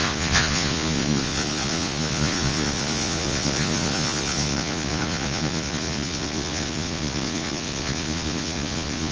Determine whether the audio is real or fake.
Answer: fake